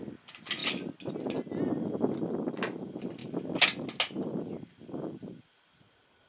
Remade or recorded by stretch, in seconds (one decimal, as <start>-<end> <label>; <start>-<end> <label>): 0.0-6.3 recorded